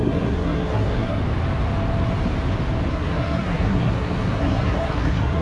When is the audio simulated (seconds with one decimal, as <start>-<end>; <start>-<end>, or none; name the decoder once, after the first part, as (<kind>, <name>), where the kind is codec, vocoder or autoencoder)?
0.0-1.2 (codec, SNAC); 2.9-5.4